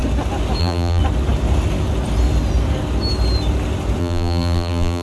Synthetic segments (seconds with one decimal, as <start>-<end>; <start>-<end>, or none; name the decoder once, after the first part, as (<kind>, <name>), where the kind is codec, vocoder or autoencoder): 0.6-1.0 (vocoder, BigVGAN v2); 4.0-5.0